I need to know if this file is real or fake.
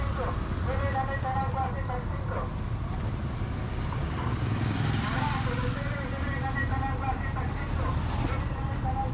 real